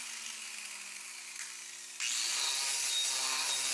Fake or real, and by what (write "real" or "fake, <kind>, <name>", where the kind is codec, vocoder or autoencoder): real